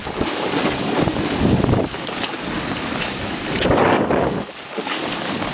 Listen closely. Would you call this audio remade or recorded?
remade